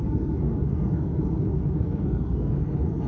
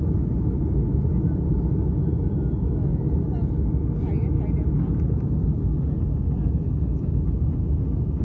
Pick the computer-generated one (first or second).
first